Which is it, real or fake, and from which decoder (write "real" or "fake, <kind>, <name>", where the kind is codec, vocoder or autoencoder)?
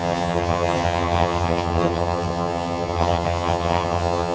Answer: fake, vocoder, HiFi-GAN